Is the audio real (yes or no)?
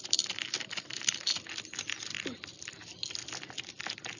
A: yes